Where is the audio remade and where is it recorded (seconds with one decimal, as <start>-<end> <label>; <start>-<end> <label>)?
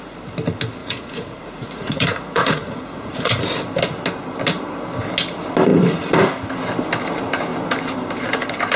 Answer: 0.0-0.8 recorded; 0.8-3.4 remade; 3.4-8.8 recorded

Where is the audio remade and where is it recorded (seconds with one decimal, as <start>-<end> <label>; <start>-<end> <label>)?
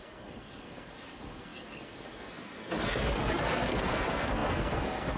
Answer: 0.0-5.2 remade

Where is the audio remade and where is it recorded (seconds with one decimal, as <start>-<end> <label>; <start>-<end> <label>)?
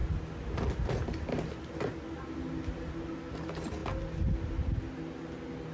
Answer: 0.0-5.7 recorded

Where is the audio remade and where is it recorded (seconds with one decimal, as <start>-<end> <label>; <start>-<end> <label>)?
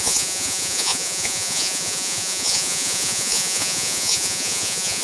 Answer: 0.0-5.0 remade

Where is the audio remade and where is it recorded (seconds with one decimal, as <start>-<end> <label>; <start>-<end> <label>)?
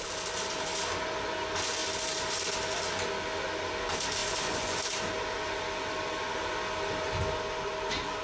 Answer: 0.0-4.2 recorded; 4.2-4.8 remade; 4.8-8.2 recorded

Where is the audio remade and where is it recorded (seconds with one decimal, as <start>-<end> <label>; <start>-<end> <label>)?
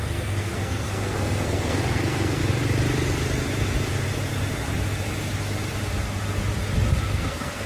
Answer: 0.0-2.4 remade; 2.4-7.0 recorded; 7.0-7.7 remade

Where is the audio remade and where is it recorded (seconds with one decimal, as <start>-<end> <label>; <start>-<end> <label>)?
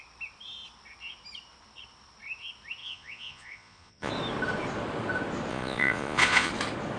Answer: 0.0-2.8 recorded; 2.8-4.1 remade; 4.1-5.5 recorded; 5.5-6.5 remade; 6.5-7.0 recorded